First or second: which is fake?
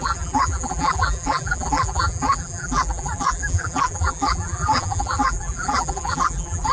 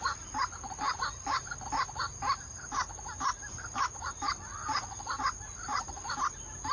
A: first